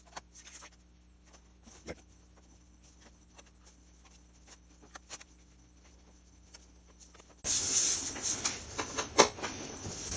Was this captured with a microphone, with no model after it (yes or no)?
yes